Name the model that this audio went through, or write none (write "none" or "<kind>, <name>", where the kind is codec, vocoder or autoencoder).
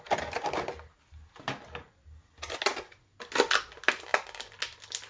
none